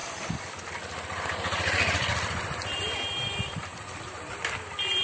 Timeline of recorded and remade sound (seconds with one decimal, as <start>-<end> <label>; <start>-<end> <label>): 0.0-3.0 remade; 3.0-3.7 recorded; 3.7-4.4 remade; 4.4-5.0 recorded